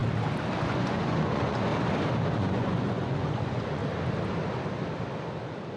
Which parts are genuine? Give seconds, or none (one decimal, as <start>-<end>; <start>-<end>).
0.0-0.6; 1.7-2.3; 3.8-5.8